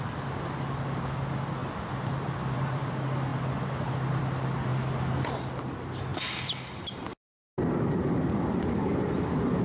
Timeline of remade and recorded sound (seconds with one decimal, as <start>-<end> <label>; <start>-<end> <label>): 0.0-1.6 recorded; 1.6-2.9 remade; 2.9-4.7 recorded; 4.7-5.6 remade; 5.6-9.6 recorded